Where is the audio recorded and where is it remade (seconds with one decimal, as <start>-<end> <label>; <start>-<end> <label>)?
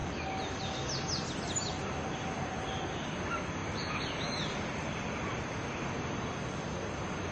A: 0.0-7.3 recorded